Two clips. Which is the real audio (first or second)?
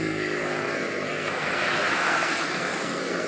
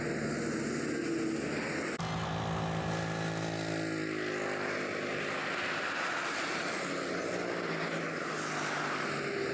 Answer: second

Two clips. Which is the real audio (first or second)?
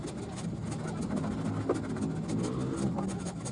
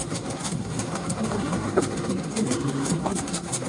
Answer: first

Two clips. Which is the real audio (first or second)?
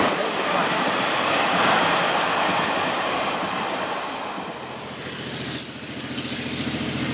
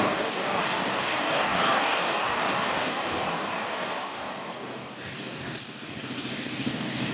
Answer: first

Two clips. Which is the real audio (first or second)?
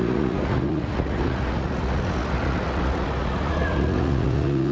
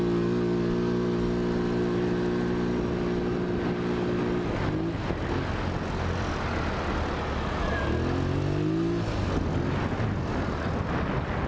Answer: second